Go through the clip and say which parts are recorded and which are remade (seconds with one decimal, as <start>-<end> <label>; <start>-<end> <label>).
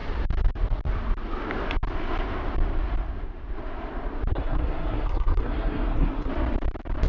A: 0.0-4.3 recorded; 4.3-6.3 remade; 6.3-7.1 recorded